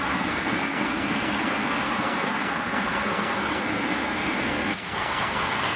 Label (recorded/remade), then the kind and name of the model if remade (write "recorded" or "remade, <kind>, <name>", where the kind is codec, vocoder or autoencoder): remade, codec, SNAC